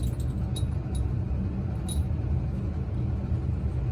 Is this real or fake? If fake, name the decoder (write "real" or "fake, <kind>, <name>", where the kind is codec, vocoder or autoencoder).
real